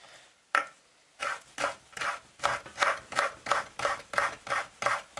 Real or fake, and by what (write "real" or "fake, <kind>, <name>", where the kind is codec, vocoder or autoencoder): real